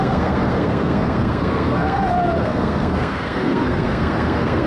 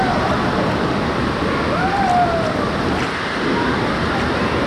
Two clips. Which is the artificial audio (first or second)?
first